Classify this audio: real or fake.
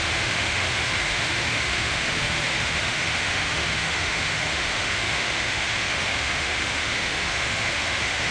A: fake